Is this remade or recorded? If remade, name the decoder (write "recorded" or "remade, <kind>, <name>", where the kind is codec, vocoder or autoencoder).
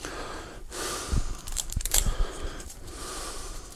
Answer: remade, vocoder, BigVGAN v2